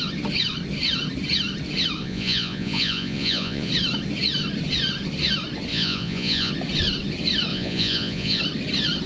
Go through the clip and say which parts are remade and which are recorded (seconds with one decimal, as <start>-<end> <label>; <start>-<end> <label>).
0.0-2.0 recorded; 2.0-3.7 remade; 3.7-5.7 recorded; 5.7-6.5 remade; 6.5-7.5 recorded; 7.5-8.4 remade; 8.4-9.1 recorded